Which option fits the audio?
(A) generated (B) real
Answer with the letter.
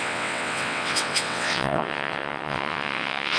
A